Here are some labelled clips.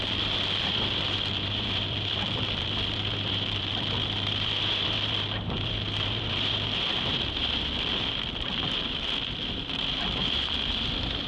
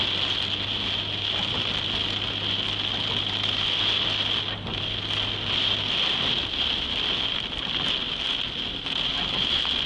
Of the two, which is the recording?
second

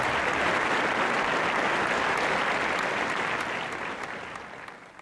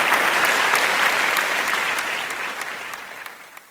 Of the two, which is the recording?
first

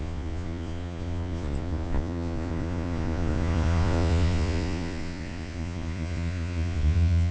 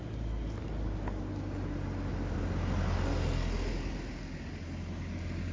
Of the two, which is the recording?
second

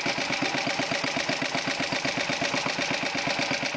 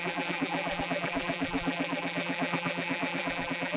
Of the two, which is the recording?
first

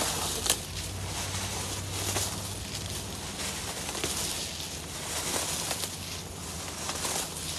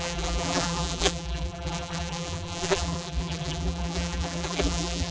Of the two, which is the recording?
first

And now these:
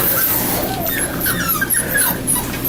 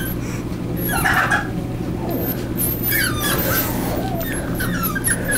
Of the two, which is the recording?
second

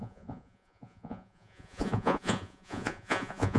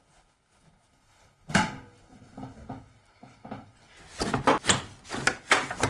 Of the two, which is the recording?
second